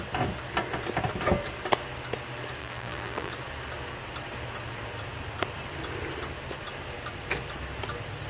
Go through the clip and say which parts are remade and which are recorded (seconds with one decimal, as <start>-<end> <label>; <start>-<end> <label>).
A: 0.0-2.6 recorded; 2.6-3.3 remade; 3.3-8.3 recorded